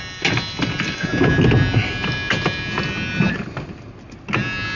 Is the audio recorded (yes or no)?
yes